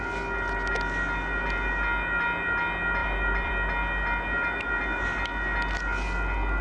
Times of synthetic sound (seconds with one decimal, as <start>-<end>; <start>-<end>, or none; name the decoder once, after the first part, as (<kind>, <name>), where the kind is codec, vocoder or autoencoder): 3.0-3.5 (vocoder, BigVGAN v2)